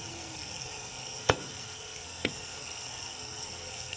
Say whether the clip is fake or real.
fake